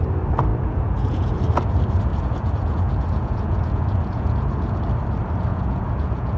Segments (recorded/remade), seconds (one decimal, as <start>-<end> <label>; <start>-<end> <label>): 0.0-0.5 recorded; 0.5-1.3 remade; 1.3-2.1 recorded; 2.1-4.8 remade; 4.8-5.5 recorded; 5.5-6.4 remade